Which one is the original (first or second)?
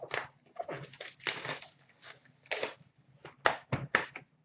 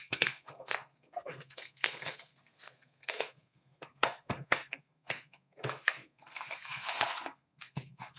first